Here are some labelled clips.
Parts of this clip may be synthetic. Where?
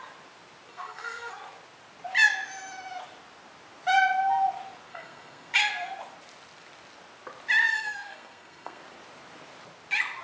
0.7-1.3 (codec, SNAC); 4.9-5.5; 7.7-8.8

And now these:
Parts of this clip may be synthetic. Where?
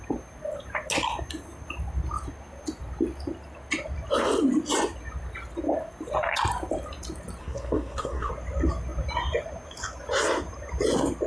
7.4-8.3 (codec, SNAC)